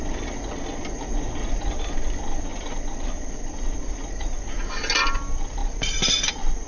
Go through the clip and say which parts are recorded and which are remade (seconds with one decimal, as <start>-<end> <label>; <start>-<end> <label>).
0.0-6.7 recorded